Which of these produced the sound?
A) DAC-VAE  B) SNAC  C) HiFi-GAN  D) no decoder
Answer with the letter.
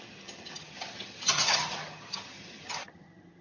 C